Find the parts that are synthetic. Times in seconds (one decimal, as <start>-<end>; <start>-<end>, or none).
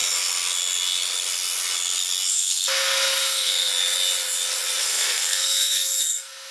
2.3-3.7; 4.8-6.5